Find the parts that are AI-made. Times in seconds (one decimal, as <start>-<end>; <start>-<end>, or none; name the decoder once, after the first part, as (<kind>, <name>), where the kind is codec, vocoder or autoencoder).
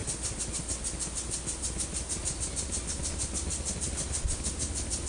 none